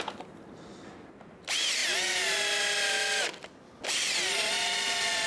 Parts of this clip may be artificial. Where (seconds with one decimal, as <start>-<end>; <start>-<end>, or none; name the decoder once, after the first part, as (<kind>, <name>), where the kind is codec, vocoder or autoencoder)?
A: none